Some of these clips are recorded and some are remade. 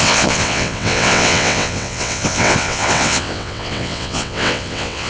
remade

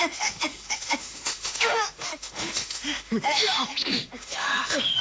remade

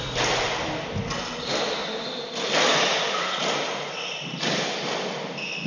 recorded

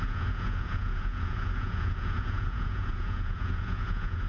remade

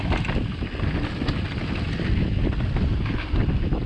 recorded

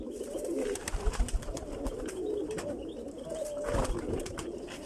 recorded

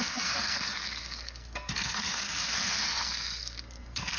remade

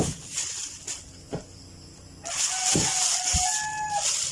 recorded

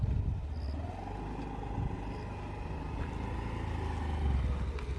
recorded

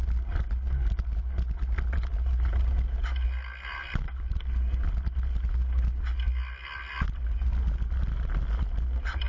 recorded